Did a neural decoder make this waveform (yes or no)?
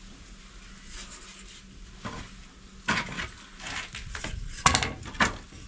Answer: no